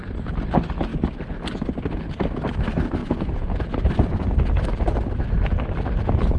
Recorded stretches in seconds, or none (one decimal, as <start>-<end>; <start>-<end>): 0.0-3.0; 3.7-6.4

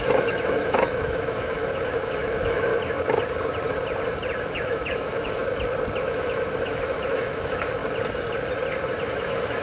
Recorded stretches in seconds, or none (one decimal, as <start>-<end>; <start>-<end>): 2.7-4.4; 5.4-6.0; 7.8-9.1

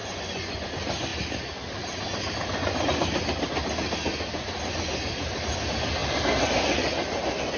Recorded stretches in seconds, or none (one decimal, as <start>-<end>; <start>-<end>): 0.7-7.6

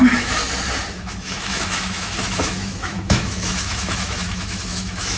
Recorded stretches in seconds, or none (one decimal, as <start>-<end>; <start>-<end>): 0.4-0.9

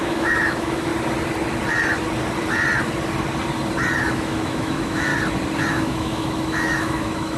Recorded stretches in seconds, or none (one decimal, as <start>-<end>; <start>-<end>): 0.9-4.1; 5.1-5.7

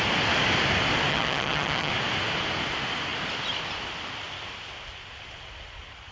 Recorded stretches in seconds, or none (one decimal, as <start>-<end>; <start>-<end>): 0.0-1.1; 1.9-6.1

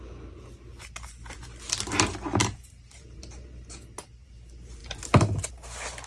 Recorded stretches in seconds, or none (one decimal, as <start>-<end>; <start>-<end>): 0.0-2.4; 4.3-6.1